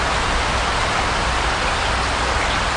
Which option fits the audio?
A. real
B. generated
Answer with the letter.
A